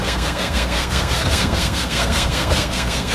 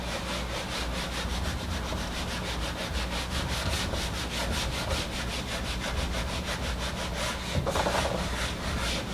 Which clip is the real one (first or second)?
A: second